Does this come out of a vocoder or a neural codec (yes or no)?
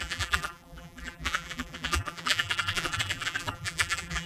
yes